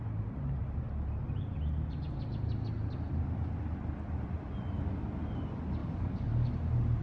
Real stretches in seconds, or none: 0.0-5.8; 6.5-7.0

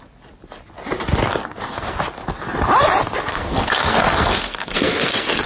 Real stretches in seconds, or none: 0.0-1.3; 2.0-3.3

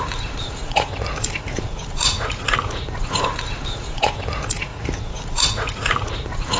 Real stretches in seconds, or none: none

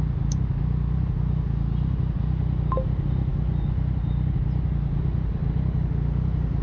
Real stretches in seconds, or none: 0.0-6.6

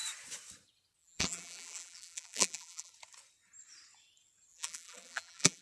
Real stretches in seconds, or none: 0.0-1.0; 2.9-4.5

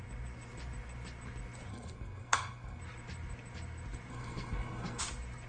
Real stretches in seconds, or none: 0.0-1.7; 2.8-4.1; 5.0-5.5

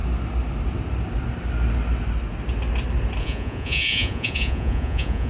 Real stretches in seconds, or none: 0.0-3.2